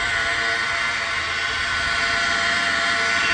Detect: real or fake real